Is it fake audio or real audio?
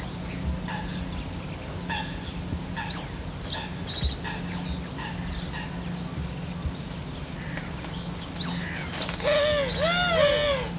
real